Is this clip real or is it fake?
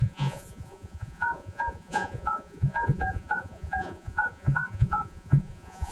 fake